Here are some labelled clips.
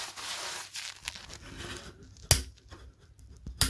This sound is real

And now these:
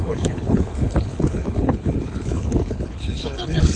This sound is fake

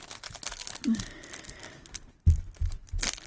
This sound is real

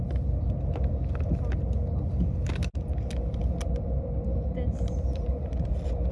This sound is real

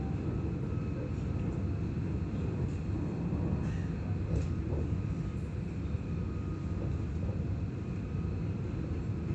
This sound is real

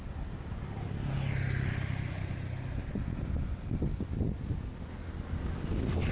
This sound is real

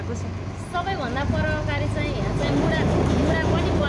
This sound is real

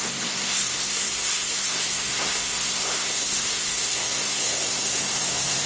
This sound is fake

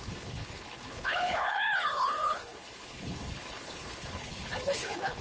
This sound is fake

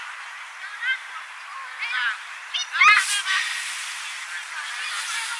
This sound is real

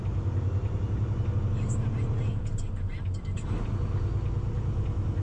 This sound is real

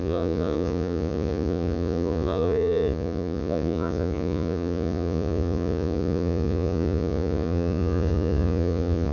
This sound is fake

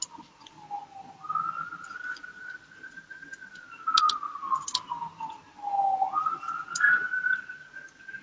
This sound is real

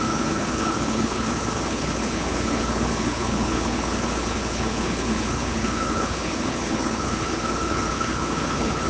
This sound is fake